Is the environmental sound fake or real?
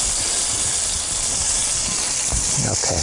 real